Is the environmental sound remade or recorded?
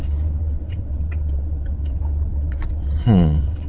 remade